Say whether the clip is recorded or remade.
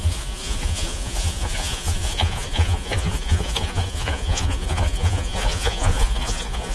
remade